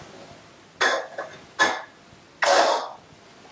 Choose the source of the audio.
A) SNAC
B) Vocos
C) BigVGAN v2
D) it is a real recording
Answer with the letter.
D